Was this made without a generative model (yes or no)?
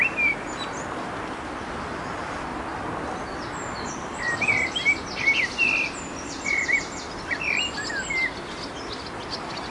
yes